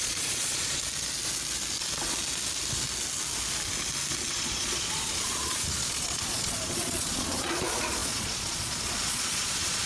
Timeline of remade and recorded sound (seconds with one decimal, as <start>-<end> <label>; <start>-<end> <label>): 0.0-0.8 remade; 0.8-4.3 recorded; 4.3-9.9 remade